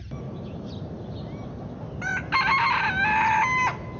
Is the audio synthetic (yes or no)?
no